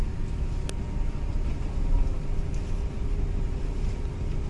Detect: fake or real real